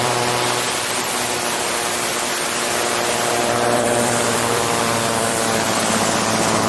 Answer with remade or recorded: remade